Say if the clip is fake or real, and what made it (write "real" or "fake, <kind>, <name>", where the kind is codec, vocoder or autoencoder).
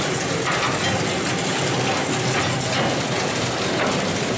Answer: real